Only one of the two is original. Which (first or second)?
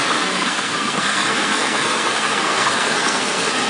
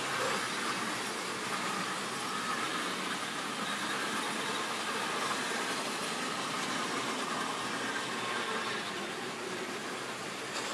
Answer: second